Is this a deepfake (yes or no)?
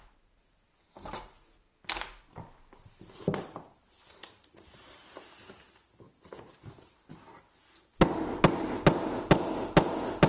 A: no